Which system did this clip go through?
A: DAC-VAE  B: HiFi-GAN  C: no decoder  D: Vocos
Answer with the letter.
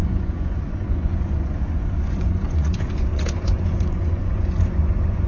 D